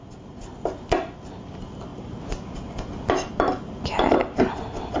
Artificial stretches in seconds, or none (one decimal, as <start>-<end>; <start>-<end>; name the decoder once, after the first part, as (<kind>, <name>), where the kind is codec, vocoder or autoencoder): none